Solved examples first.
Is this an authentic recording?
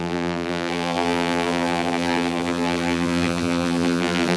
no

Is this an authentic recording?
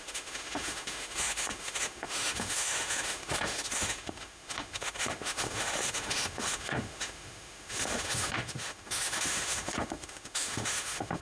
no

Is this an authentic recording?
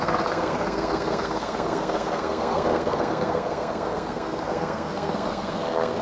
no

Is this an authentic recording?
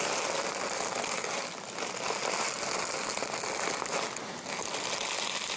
yes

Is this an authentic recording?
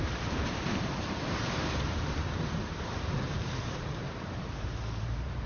no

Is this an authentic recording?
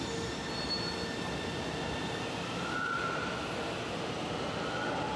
yes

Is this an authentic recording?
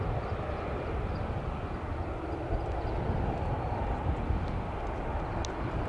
yes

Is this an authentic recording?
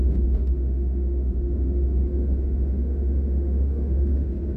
no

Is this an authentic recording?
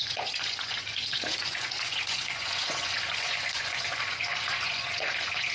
no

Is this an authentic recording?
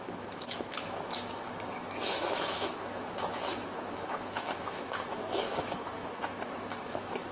no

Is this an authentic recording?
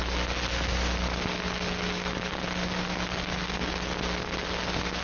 yes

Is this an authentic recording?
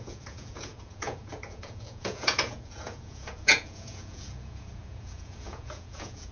no